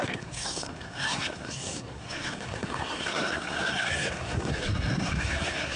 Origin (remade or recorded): remade